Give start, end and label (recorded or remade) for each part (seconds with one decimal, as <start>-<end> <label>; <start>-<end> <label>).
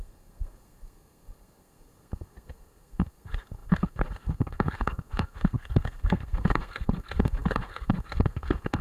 0.0-8.8 remade